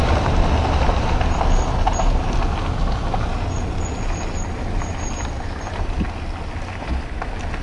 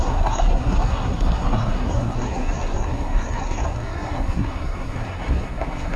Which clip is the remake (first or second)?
second